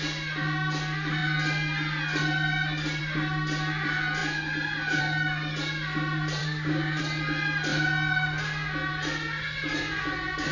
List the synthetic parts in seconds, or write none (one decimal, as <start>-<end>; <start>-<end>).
6.4-7.0